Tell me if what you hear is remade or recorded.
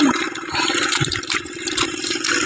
remade